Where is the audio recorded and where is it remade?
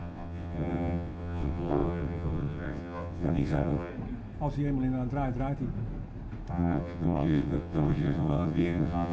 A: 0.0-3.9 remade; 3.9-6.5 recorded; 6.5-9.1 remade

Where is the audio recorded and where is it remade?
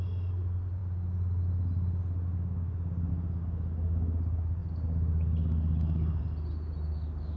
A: 0.0-7.4 recorded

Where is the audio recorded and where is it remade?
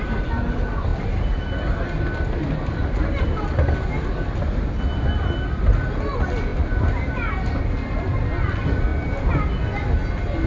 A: 0.0-10.5 recorded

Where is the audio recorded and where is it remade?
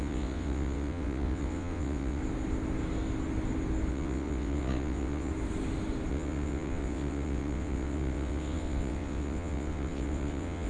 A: 0.0-2.2 remade; 2.2-3.9 recorded; 3.9-5.3 remade; 5.3-6.1 recorded; 6.1-10.7 remade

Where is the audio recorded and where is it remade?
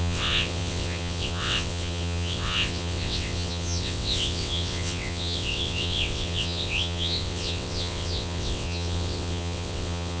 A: 0.0-10.2 remade